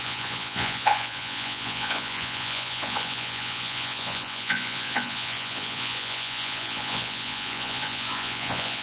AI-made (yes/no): yes